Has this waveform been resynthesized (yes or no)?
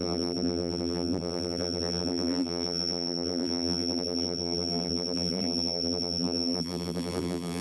yes